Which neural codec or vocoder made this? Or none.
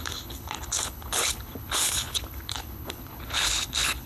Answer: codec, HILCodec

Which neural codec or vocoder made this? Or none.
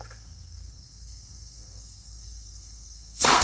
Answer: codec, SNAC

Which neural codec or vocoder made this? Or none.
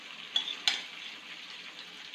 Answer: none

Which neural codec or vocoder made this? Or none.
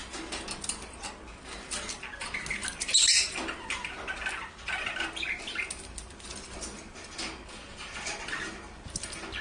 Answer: none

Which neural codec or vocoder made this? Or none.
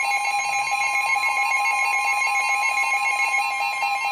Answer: none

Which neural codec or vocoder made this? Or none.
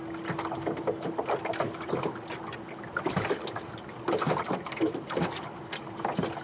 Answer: none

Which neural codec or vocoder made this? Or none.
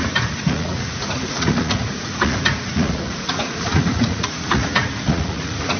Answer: vocoder, Vocos